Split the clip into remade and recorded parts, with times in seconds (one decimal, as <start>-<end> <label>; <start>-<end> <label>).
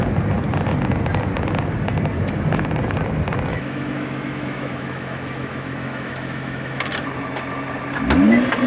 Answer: 0.0-3.5 recorded; 3.5-6.9 remade; 6.9-8.7 recorded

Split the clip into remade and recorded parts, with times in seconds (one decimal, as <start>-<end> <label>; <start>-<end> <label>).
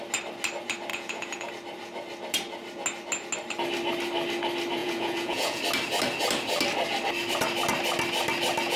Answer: 0.0-0.9 recorded; 0.9-1.5 remade; 1.5-4.8 recorded; 4.8-5.6 remade; 5.6-8.8 recorded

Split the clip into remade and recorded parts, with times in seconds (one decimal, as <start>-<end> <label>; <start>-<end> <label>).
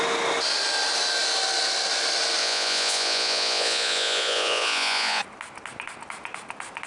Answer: 0.0-2.4 recorded; 2.4-5.2 remade; 5.2-6.9 recorded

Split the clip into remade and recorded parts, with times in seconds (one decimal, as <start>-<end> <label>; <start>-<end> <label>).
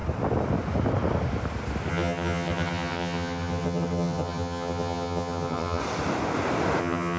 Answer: 0.0-1.9 recorded; 1.9-5.8 remade; 5.8-6.8 recorded; 6.8-7.2 remade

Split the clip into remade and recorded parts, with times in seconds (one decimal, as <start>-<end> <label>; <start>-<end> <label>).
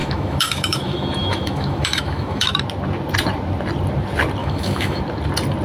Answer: 0.0-2.5 remade; 2.5-4.4 recorded; 4.4-5.0 remade; 5.0-5.6 recorded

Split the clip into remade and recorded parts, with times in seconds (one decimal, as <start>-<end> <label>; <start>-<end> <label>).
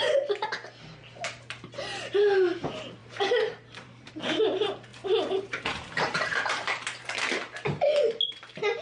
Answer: 0.0-3.0 recorded; 3.0-4.1 remade; 4.1-4.9 recorded; 4.9-7.3 remade; 7.3-8.8 recorded